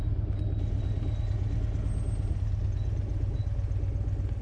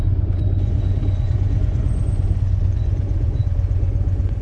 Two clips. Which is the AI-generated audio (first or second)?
second